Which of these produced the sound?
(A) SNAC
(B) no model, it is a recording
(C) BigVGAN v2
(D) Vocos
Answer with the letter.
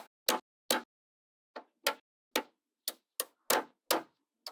B